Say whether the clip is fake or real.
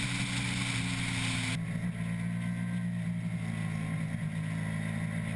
real